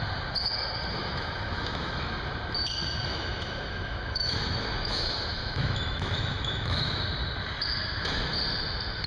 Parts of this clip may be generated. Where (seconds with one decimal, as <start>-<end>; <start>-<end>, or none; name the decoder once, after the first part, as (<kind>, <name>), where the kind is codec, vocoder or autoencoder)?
1.0-2.2 (autoencoder, DAC-VAE); 3.1-7.0